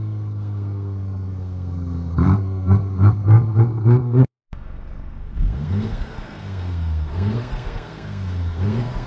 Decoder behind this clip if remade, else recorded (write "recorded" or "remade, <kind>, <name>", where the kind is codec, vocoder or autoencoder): remade, codec, SNAC